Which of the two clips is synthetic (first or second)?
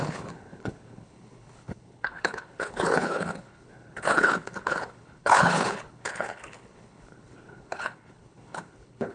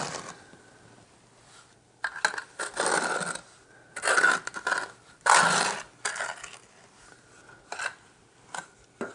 first